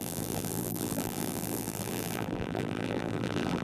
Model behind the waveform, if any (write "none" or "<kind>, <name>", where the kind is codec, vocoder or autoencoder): vocoder, BigVGAN v2